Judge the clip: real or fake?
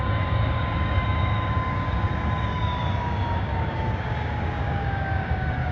fake